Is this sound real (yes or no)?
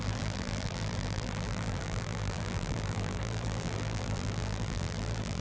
no